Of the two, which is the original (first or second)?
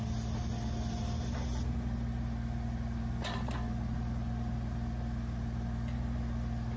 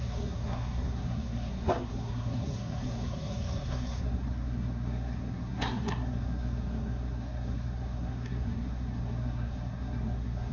first